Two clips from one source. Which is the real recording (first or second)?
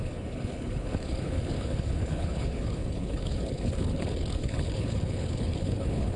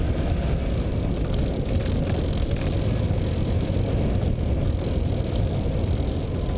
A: second